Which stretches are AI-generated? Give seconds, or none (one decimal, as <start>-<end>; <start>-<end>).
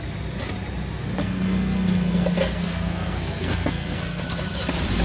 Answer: 1.2-4.2